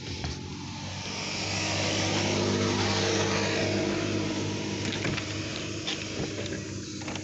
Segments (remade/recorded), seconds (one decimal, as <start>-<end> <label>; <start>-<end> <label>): 0.0-7.2 recorded